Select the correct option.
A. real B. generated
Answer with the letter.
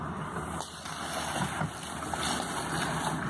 A